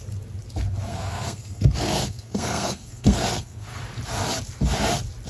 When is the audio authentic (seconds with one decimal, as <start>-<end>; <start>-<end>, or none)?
0.0-0.9; 3.8-5.3